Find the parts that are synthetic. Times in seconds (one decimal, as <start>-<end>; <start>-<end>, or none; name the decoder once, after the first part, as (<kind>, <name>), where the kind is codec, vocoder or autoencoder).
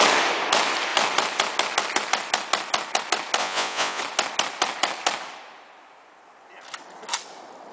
3.4-4.0 (vocoder, Vocos)